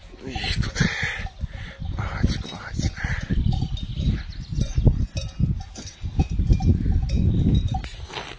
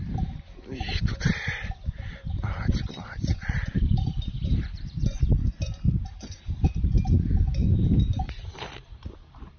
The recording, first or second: first